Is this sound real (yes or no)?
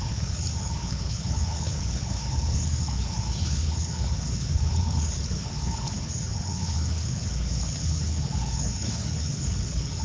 no